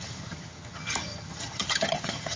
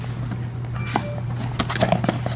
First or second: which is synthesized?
first